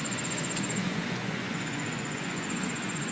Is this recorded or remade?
remade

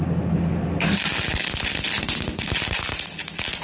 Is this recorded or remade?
recorded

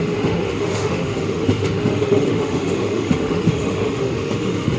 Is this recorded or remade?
remade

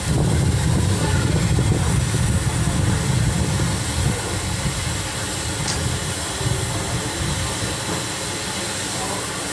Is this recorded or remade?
recorded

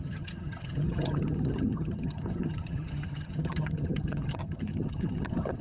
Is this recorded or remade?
remade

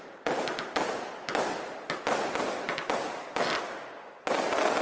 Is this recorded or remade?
recorded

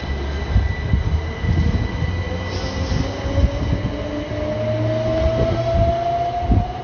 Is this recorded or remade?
recorded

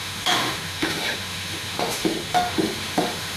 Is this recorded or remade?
remade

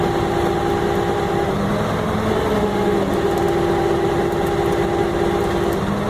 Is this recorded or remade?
recorded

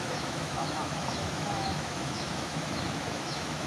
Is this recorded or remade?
remade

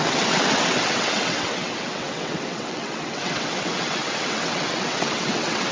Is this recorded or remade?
remade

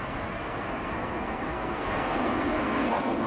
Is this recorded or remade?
remade